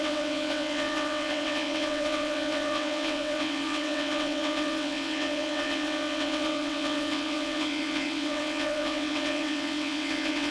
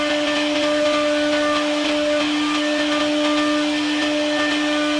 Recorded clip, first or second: second